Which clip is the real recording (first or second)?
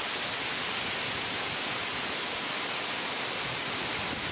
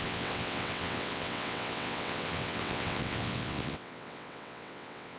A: first